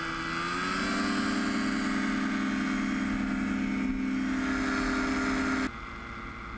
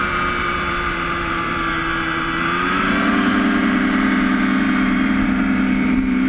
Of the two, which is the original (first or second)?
first